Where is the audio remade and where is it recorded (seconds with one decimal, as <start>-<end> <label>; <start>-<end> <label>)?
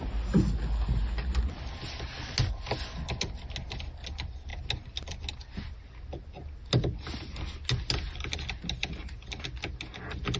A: 0.0-10.4 recorded